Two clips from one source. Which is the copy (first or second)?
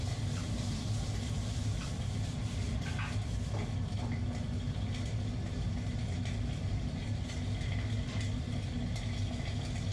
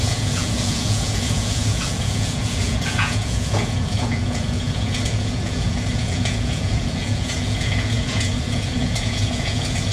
second